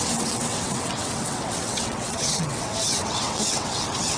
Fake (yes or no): yes